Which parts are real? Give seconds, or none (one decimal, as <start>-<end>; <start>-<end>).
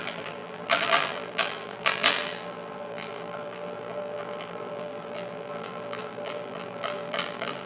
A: none